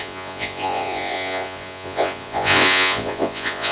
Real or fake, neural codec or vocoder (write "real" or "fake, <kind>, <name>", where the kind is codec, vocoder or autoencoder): fake, vocoder, Vocos